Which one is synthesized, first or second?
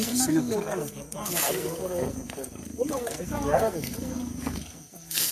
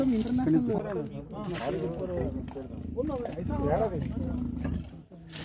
first